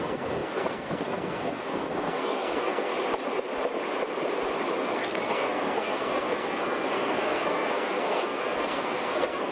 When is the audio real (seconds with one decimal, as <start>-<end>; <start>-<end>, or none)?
2.9-4.8